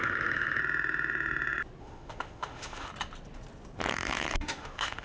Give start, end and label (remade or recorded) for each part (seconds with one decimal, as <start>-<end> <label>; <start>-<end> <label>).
0.0-0.6 remade; 0.6-1.8 recorded; 1.8-2.9 remade; 2.9-3.9 recorded; 3.9-5.0 remade